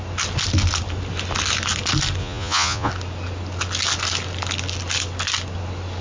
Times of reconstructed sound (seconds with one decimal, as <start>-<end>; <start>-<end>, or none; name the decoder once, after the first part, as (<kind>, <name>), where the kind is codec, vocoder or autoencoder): 2.2-2.9 (vocoder, Vocos)